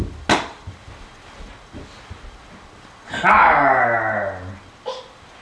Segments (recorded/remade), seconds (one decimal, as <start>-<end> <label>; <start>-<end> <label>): 0.0-5.4 recorded